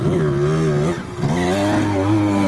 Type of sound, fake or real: real